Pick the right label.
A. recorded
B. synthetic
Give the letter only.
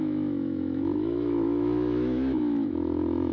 B